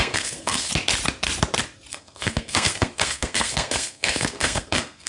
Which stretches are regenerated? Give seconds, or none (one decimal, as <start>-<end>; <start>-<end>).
0.0-0.7; 1.9-5.1